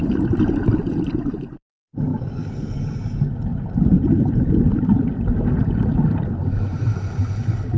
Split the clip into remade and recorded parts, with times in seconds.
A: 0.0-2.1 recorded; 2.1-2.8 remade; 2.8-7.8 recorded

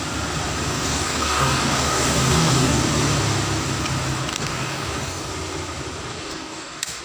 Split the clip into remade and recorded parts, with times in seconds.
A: 0.0-0.7 recorded; 0.7-2.9 remade; 2.9-4.3 recorded; 4.3-5.3 remade; 5.3-6.1 recorded; 6.1-7.0 remade

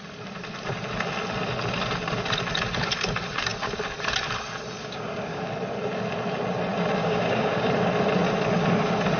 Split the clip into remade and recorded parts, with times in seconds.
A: 0.0-4.8 recorded; 4.8-5.4 remade; 5.4-7.0 recorded; 7.0-7.7 remade; 7.7-9.2 recorded

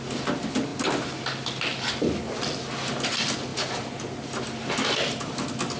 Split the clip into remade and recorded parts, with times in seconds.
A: 0.0-5.8 recorded

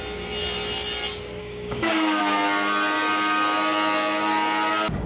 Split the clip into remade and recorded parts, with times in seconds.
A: 0.0-1.4 recorded; 1.4-2.2 remade; 2.2-5.1 recorded

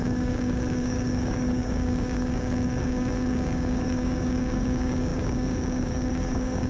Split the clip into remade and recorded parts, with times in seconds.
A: 0.0-6.7 remade